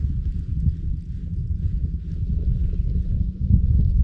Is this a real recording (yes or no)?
yes